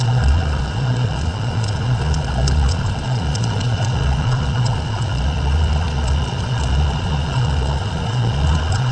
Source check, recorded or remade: remade